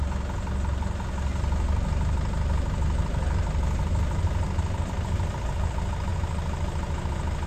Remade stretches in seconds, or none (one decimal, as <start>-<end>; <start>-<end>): none